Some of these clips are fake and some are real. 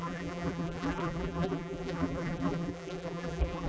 fake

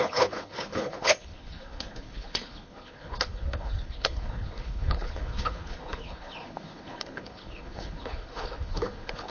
fake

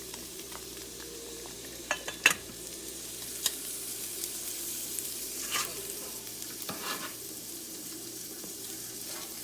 fake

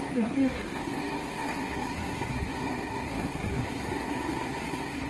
fake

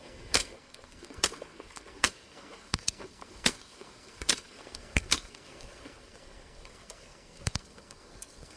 fake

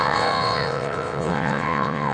fake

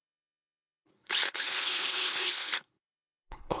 fake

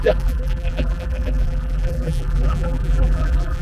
fake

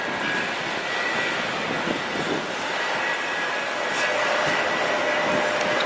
real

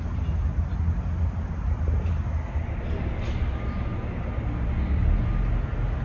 real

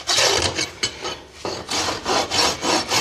fake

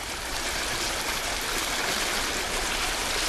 real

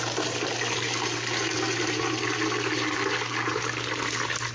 real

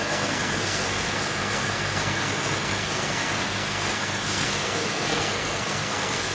fake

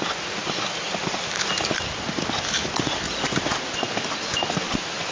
real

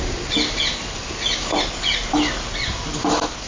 real